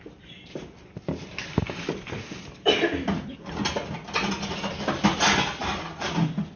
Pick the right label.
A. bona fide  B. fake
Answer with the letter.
A